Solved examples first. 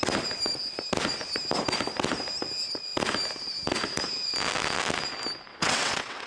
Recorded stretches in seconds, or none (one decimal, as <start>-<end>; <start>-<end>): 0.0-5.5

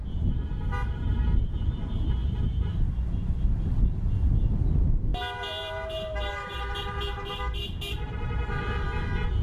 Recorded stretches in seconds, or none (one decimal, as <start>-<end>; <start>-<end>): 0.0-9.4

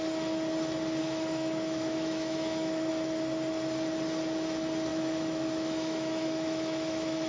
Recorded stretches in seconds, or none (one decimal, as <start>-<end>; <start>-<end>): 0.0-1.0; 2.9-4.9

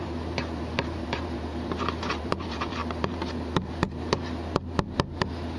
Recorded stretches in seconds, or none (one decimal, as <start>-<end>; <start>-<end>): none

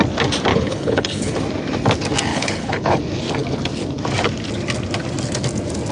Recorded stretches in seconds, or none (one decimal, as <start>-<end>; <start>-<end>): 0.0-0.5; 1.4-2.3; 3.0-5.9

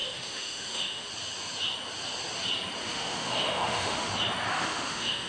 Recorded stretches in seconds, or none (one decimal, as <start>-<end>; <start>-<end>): 1.1-2.8; 4.1-4.5

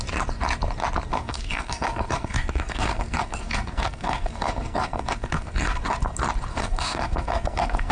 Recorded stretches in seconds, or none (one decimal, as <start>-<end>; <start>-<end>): 0.0-1.1; 5.8-6.5

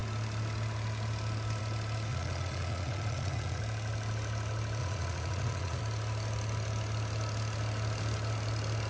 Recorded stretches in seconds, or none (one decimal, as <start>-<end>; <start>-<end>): 0.0-2.1; 3.6-4.8; 5.8-8.9